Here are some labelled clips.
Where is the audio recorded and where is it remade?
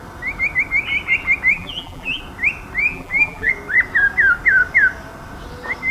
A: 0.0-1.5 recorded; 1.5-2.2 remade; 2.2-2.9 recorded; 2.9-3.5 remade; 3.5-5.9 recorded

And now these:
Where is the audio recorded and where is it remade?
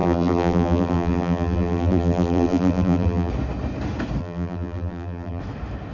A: 0.0-3.3 remade; 3.3-4.2 recorded; 4.2-5.4 remade; 5.4-5.9 recorded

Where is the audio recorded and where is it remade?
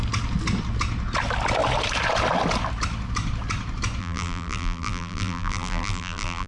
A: 0.0-4.0 recorded; 4.0-6.5 remade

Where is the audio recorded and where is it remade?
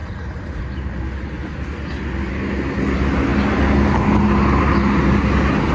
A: 0.0-1.0 remade; 1.0-5.7 recorded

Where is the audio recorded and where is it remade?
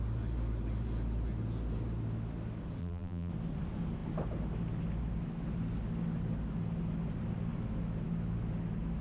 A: 0.0-2.8 recorded; 2.8-3.3 remade; 3.3-9.0 recorded